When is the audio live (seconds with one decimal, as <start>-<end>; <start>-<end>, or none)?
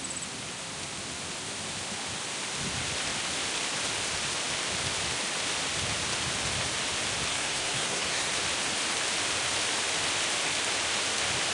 0.0-7.3; 8.3-11.5